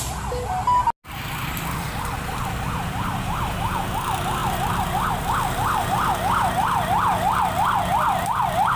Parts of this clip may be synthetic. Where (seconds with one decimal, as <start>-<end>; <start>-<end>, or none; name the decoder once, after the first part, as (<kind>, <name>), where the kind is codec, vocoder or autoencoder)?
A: none